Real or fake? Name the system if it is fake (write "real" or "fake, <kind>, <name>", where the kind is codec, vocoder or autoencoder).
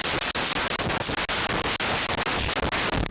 real